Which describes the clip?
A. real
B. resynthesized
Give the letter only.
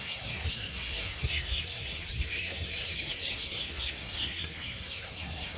B